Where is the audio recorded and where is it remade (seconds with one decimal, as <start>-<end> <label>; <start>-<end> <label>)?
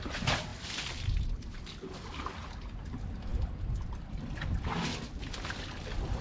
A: 0.0-6.2 recorded